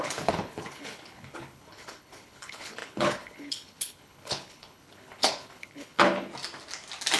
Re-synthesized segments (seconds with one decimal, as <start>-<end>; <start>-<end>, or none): 0.0-6.3